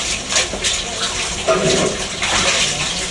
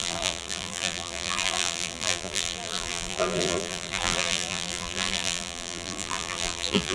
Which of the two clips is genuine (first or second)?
first